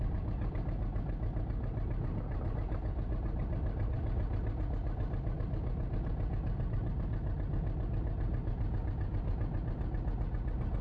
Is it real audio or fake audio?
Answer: real